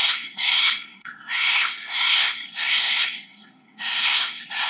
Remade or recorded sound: remade